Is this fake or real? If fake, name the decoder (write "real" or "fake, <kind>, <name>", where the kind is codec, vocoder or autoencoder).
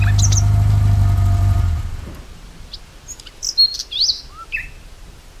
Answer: real